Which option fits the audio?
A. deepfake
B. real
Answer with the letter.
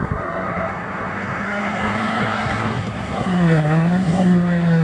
A